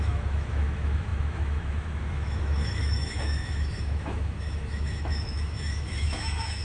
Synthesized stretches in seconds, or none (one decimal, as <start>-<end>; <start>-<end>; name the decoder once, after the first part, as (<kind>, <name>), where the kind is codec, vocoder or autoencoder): 0.0-6.6 (autoencoder, DAC-VAE)